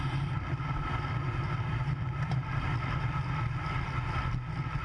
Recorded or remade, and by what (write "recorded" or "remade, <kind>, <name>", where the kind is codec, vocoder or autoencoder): remade, vocoder, BigVGAN v2